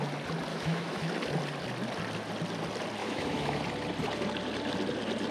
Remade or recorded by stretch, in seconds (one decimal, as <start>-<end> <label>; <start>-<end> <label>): 0.0-0.5 recorded; 0.5-1.1 remade; 1.1-3.0 recorded; 3.0-3.6 remade; 3.6-5.3 recorded